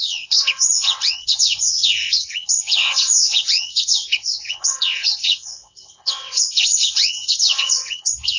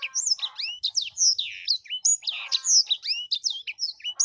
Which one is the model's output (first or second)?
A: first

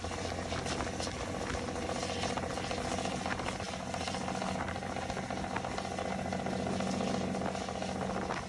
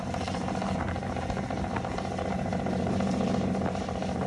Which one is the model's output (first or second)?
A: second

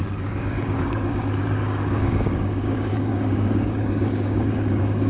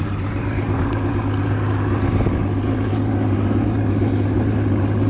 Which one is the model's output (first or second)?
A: first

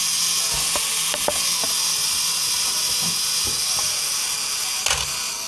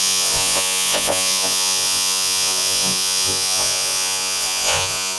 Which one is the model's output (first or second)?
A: second